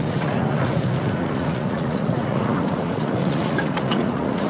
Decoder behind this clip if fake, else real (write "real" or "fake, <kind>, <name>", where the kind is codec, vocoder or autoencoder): fake, vocoder, Vocos